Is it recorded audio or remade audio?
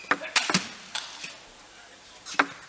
recorded